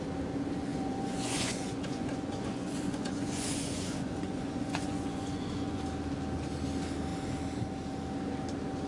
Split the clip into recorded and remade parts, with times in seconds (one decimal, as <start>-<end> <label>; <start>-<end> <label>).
0.0-0.7 recorded; 0.7-5.8 remade; 5.8-8.9 recorded